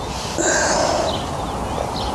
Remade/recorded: recorded